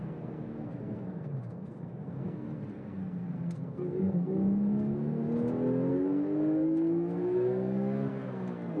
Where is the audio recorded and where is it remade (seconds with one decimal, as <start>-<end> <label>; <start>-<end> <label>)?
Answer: 0.0-5.2 remade; 5.2-5.9 recorded; 5.9-8.8 remade